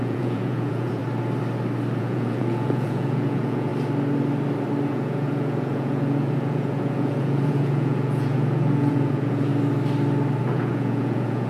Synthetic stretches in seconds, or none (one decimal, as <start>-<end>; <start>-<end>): 0.0-1.0; 2.0-3.7; 4.9-9.5; 10.4-11.5